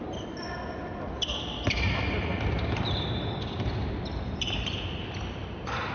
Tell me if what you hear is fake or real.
real